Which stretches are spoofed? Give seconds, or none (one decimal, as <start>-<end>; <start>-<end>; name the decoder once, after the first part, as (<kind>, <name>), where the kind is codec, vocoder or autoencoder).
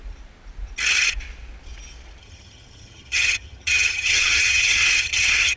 2.2-5.6 (vocoder, HiFi-GAN)